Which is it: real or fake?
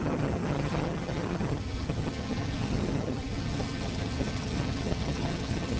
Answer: fake